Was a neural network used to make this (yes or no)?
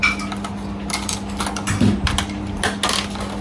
no